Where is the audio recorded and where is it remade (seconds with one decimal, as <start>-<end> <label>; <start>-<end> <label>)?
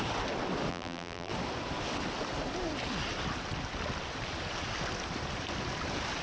0.0-0.7 recorded; 0.7-1.3 remade; 1.3-6.2 recorded